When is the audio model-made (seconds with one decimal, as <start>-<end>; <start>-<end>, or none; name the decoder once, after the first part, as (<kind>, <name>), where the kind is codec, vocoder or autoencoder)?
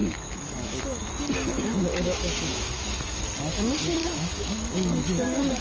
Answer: 0.0-1.1 (autoencoder, DAC-VAE); 1.5-3.2; 4.0-5.6